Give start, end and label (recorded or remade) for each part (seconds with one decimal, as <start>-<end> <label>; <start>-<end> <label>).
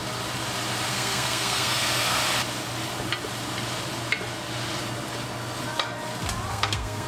0.0-0.9 recorded; 0.9-2.2 remade; 2.2-6.5 recorded; 6.5-7.1 remade